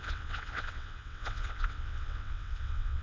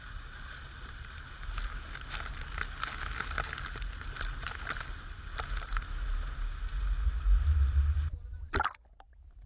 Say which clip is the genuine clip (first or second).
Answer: second